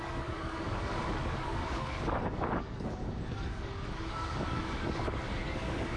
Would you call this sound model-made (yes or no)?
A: yes